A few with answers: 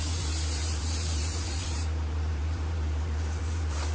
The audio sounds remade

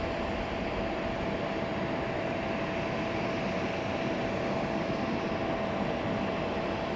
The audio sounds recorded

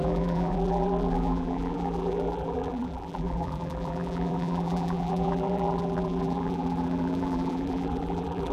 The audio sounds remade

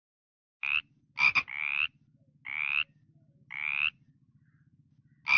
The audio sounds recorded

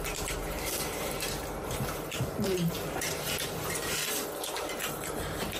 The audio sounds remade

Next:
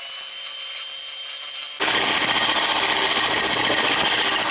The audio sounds recorded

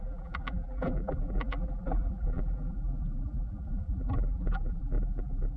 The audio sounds remade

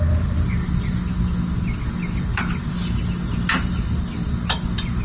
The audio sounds recorded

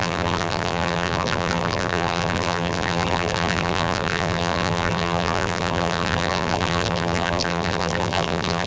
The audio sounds remade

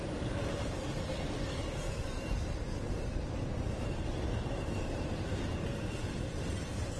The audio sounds remade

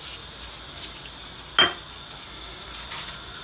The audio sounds recorded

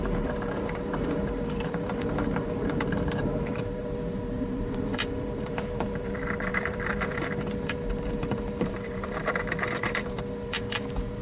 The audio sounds remade